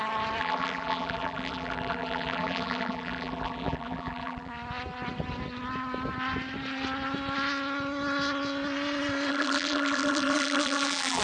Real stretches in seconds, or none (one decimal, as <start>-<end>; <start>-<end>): 0.0-0.4; 4.5-9.3